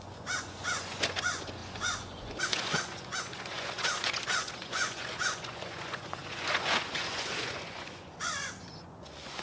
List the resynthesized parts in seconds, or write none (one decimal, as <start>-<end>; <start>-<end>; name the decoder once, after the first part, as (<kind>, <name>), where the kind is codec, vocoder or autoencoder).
0.0-9.4 (vocoder, Vocos)